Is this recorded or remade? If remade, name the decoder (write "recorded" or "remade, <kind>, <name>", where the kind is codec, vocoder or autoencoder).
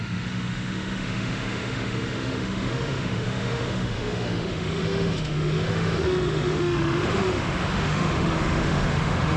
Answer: remade, autoencoder, DAC-VAE